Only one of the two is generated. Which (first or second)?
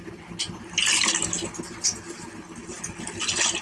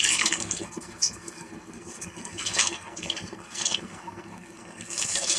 second